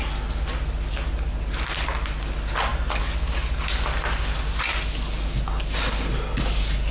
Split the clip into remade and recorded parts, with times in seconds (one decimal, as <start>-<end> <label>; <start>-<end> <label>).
0.0-6.9 recorded